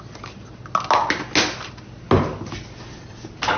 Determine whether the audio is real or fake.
real